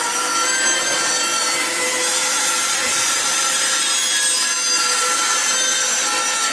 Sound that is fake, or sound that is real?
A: real